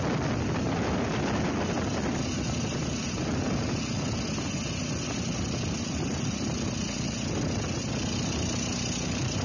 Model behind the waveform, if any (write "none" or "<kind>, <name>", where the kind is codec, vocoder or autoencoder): none